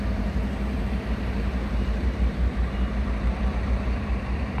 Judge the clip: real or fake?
fake